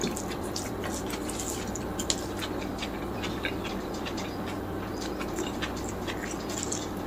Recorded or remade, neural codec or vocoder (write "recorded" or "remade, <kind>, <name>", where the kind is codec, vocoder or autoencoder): recorded